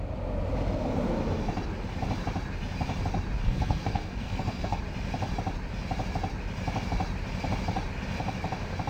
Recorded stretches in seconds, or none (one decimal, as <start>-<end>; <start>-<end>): 0.0-3.4; 4.8-8.9